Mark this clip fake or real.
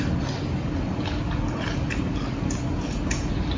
real